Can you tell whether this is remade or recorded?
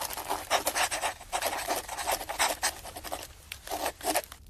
recorded